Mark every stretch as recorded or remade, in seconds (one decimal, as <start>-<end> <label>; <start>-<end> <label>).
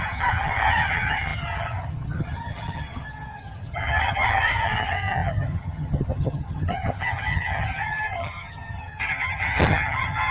0.0-10.3 remade